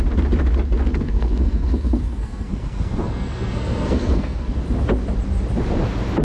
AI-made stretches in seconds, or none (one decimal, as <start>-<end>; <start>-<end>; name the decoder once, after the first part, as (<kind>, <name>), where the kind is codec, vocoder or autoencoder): 0.9-4.6 (codec, SNAC)